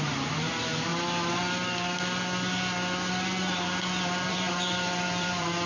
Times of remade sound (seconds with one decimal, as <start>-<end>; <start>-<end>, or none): 0.0-0.9; 4.3-5.7